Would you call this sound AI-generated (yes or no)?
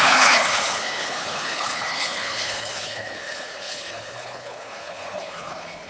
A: yes